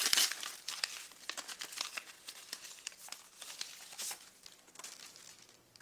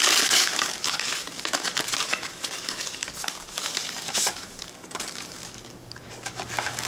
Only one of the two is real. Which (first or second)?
first